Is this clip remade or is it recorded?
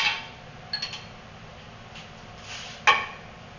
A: recorded